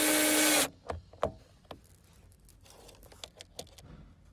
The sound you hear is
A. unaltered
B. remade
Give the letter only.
A